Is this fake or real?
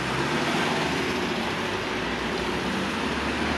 real